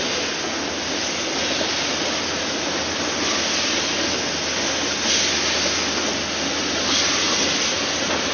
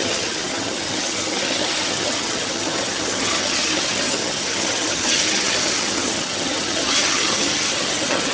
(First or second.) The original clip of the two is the first